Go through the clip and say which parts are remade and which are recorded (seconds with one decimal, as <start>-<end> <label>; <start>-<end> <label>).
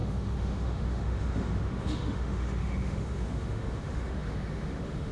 0.0-5.1 remade